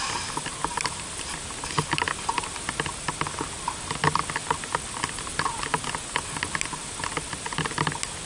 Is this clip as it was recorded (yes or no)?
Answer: yes